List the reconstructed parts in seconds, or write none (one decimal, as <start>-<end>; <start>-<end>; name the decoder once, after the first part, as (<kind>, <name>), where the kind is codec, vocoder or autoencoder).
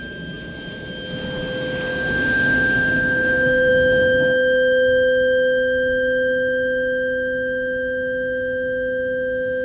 1.9-3.7 (codec, DAC)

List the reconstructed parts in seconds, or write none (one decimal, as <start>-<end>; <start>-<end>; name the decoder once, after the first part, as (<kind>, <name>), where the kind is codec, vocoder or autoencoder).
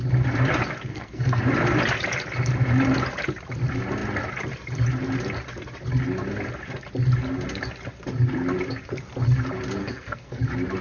0.9-1.4 (codec, SNAC); 9.8-10.4